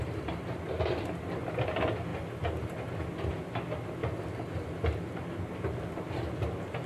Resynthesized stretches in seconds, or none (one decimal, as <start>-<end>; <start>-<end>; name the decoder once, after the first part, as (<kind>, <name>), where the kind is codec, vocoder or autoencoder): none